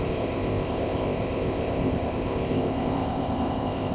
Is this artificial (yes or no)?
yes